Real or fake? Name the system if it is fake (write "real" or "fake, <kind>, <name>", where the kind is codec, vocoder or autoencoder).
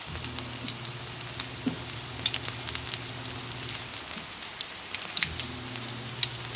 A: real